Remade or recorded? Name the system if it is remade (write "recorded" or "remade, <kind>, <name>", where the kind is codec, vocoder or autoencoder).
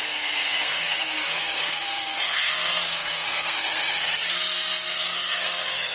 remade, codec, SNAC